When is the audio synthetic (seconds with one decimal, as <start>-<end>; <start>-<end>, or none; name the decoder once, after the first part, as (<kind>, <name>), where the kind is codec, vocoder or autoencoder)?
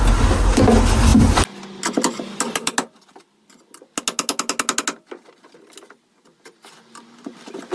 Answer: none